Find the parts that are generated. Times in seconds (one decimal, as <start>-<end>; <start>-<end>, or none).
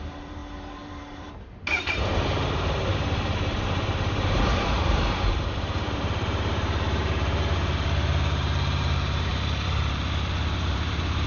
0.0-0.4; 1.0-9.3; 10.7-11.3